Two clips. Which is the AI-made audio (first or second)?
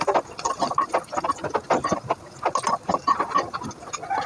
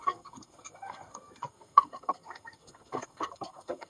second